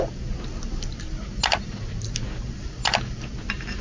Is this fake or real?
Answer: real